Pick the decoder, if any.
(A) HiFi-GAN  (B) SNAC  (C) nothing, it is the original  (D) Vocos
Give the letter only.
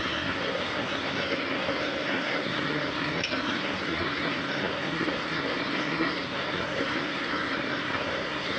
B